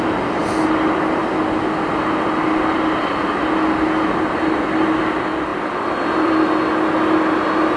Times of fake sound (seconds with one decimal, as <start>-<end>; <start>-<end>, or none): 5.5-6.3